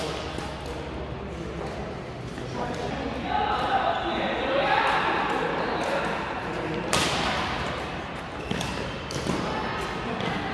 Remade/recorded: recorded